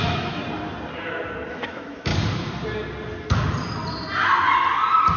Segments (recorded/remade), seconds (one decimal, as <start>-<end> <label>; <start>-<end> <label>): 0.0-0.4 remade; 0.4-1.5 recorded; 1.5-2.1 remade; 2.1-5.2 recorded